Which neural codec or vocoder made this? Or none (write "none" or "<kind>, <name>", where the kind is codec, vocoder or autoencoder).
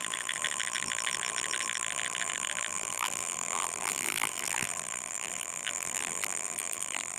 vocoder, BigVGAN v2